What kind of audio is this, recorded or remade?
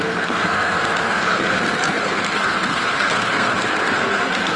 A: remade